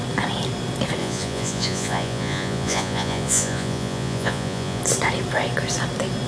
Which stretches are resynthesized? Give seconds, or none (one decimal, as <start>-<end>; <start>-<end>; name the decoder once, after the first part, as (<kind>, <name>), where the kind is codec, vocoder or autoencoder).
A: 1.0-4.8 (vocoder, Vocos)